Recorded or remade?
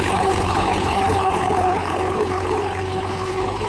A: remade